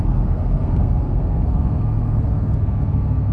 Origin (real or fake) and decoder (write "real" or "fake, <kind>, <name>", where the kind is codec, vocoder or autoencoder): fake, codec, SNAC